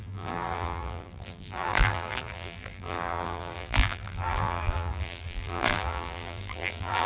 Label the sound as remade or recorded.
remade